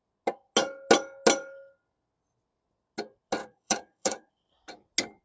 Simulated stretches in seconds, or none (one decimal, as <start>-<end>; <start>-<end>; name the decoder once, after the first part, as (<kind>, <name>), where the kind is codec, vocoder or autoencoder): 3.4-4.3 (codec, DAC)